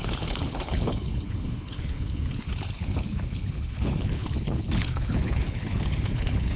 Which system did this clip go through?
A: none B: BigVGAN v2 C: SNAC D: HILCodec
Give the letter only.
D